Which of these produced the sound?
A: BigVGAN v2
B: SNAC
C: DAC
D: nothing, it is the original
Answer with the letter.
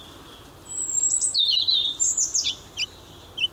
D